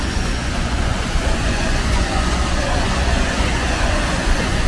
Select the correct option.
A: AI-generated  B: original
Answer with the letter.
A